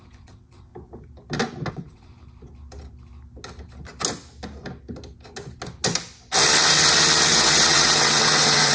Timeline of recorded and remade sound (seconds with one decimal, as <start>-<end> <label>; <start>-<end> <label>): 0.0-0.7 remade; 0.7-1.7 recorded; 1.7-2.1 remade; 2.1-7.3 recorded; 7.3-8.7 remade